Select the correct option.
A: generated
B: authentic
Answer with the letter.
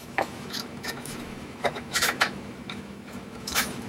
A